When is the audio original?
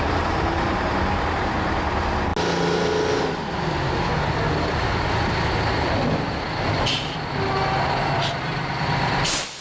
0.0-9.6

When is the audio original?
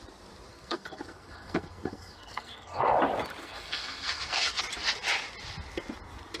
0.0-0.5; 3.0-3.4; 4.6-6.4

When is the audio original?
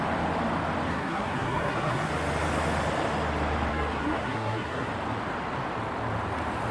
0.0-0.9; 2.1-3.7; 4.9-6.7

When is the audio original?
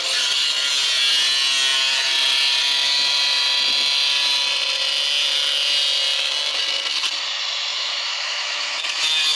0.0-7.7; 8.8-9.4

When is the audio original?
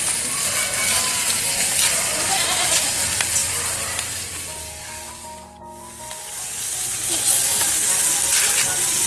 0.0-4.6; 5.1-9.1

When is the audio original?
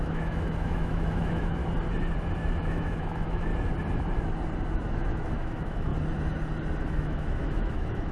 1.6-2.7; 3.5-4.9; 5.9-6.8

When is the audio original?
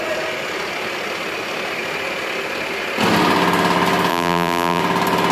0.0-4.1; 4.8-5.3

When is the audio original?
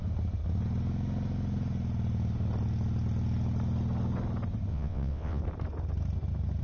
0.0-4.7; 5.4-6.6